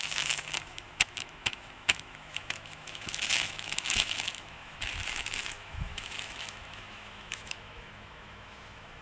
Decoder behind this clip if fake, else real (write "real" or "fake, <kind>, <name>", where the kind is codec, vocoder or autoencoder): fake, autoencoder, DAC-VAE